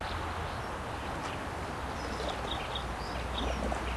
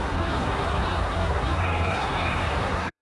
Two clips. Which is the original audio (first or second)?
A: first